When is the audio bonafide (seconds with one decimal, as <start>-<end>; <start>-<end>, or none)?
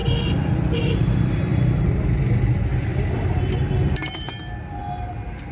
0.0-5.5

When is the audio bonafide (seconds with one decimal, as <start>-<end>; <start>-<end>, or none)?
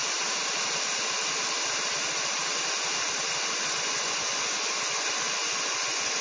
0.0-3.7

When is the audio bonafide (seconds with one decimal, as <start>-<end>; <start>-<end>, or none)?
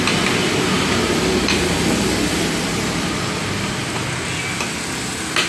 0.0-5.5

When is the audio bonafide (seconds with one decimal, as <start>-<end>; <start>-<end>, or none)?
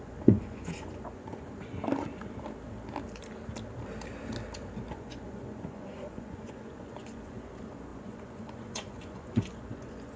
1.8-4.9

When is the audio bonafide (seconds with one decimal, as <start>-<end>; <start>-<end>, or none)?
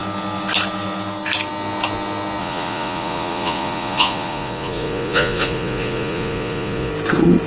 0.0-2.4; 6.9-7.5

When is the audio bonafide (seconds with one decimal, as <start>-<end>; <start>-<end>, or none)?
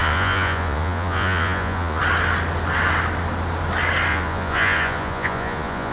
2.0-4.1